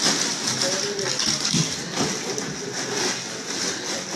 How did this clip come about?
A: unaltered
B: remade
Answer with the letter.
A